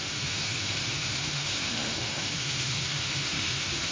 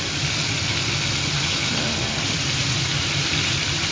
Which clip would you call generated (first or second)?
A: first